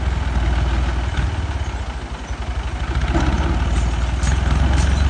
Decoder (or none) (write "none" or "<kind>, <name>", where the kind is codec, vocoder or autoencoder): none